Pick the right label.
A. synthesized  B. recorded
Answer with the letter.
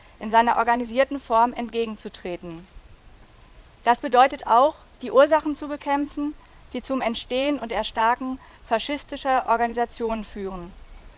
A